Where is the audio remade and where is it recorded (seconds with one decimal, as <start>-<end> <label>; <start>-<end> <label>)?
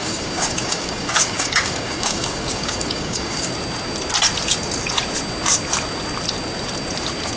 0.0-3.5 remade; 3.5-7.4 recorded